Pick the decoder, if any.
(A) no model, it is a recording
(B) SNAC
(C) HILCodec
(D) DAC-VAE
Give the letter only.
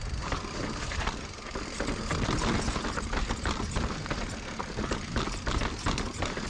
A